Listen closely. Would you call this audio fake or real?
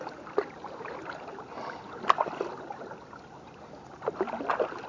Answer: fake